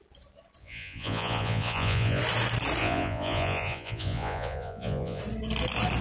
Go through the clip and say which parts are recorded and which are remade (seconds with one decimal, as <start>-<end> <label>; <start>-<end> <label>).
0.0-0.6 recorded; 0.6-2.2 remade; 2.2-2.8 recorded; 2.8-5.2 remade; 5.2-6.0 recorded